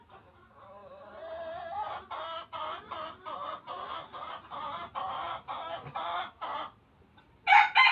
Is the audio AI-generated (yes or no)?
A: no